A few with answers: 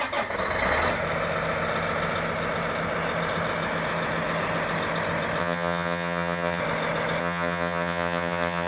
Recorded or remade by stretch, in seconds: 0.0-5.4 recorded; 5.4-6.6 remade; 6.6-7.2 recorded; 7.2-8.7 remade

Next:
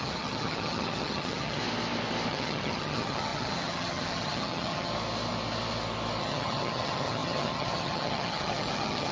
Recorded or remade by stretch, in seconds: 0.0-1.6 remade; 1.6-2.3 recorded; 2.3-4.9 remade; 4.9-6.2 recorded; 6.2-9.1 remade

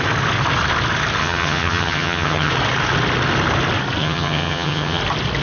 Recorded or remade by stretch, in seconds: 0.0-1.2 recorded; 1.2-2.5 remade; 2.5-4.0 recorded; 4.0-5.0 remade; 5.0-5.4 recorded

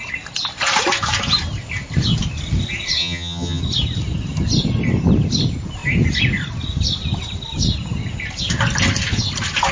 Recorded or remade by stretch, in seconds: 0.0-3.0 recorded; 3.0-3.6 remade; 3.6-9.7 recorded